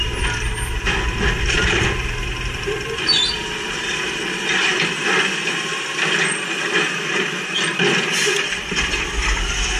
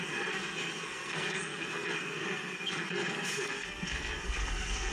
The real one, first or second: first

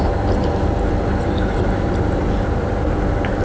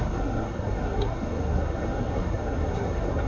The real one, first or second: first